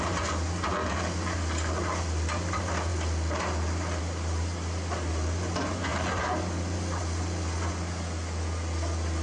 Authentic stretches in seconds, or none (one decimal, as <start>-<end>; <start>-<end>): 0.0-9.2